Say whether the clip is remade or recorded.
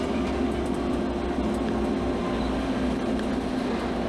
recorded